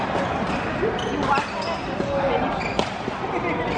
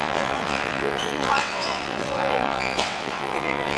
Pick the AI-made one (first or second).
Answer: second